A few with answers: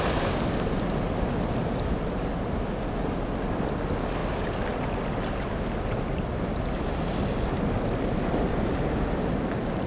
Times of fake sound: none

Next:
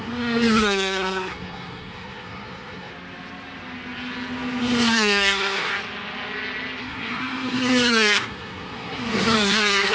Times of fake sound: 0.0-2.9 (codec, SNAC); 4.6-5.7; 6.8-9.9

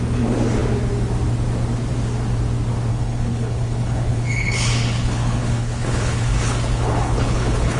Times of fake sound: 2.9-7.8 (codec, HILCodec)

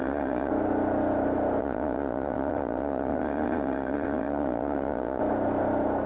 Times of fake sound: 0.0-0.5 (vocoder, Vocos); 1.6-5.2